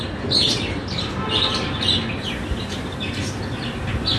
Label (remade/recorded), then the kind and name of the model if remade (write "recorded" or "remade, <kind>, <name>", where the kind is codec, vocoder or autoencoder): recorded